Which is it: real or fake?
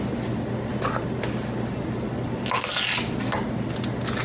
real